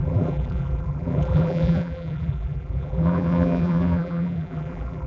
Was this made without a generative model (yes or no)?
no